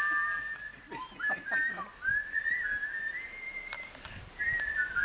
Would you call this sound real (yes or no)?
yes